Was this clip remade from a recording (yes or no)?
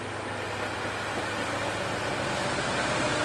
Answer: no